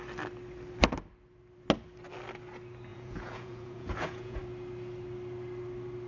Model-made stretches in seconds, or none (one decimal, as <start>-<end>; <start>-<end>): 2.9-4.4